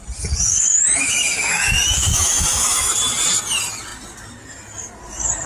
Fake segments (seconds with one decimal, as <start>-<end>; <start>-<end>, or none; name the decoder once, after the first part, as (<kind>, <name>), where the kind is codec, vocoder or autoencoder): 0.5-2.9 (autoencoder, DAC-VAE)